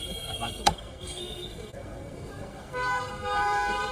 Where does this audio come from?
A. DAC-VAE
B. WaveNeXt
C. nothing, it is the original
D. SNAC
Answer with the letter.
D